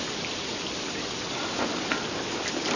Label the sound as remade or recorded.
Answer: recorded